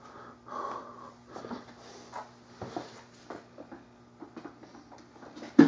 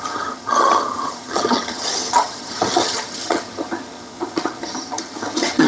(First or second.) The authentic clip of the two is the first